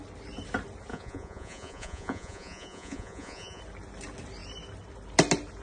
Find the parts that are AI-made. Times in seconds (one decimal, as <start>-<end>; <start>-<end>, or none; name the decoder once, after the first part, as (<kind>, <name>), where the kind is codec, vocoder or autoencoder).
0.9-3.6 (vocoder, Vocos)